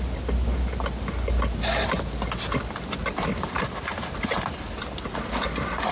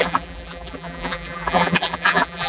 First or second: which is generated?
second